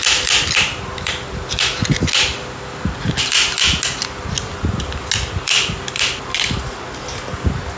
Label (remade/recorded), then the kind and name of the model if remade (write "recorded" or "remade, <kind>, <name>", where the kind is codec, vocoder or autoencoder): recorded